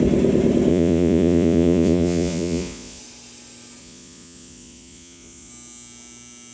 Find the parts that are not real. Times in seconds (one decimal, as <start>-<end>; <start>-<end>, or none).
0.7-3.0; 3.8-5.5